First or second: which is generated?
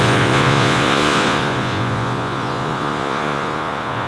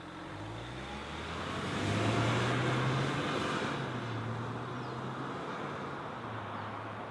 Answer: first